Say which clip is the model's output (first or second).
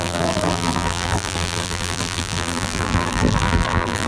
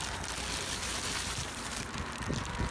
first